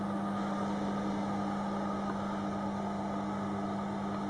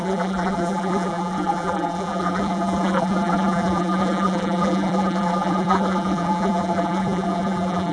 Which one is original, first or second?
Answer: first